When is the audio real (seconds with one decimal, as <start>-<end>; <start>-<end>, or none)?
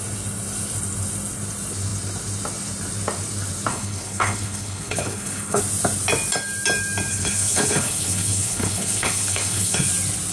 0.0-3.7; 5.6-7.1; 9.9-10.3